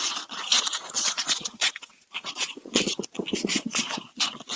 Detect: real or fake fake